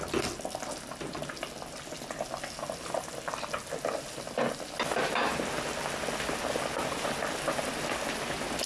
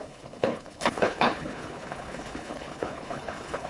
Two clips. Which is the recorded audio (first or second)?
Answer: first